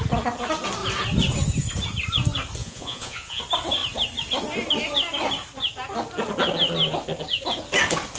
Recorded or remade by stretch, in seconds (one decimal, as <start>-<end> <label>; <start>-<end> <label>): 0.0-2.6 recorded; 2.6-3.4 remade; 3.4-8.2 recorded

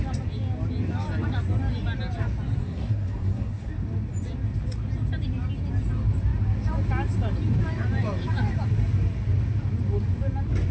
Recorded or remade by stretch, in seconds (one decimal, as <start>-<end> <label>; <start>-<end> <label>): 0.0-2.6 recorded; 2.6-3.7 remade; 3.7-10.7 recorded

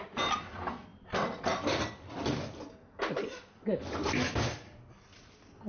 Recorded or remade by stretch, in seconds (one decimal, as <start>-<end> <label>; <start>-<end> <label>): 0.0-5.7 recorded

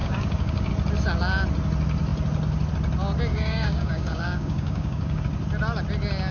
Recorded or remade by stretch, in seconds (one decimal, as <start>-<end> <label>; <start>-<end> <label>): 0.0-0.7 remade; 0.7-3.3 recorded; 3.3-5.2 remade; 5.2-6.3 recorded